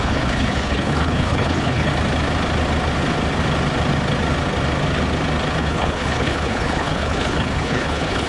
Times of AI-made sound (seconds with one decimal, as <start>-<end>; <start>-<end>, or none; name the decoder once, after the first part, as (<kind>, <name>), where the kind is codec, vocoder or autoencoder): 0.0-1.9 (codec, HILCodec); 5.6-8.3